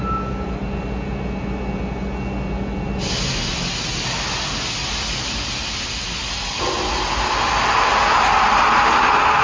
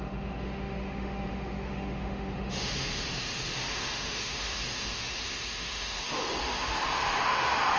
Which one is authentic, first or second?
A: first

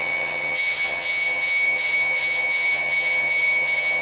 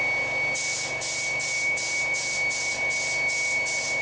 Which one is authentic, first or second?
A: second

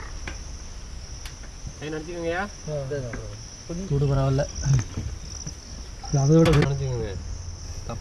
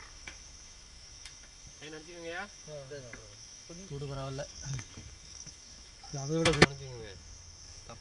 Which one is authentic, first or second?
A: first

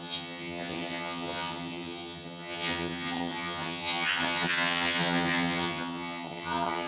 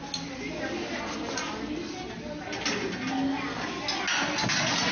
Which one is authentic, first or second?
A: second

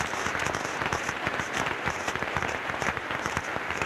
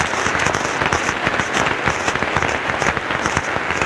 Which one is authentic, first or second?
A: second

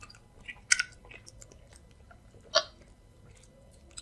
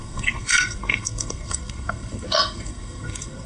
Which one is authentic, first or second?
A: first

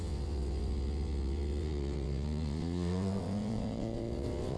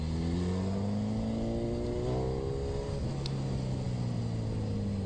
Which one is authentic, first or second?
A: second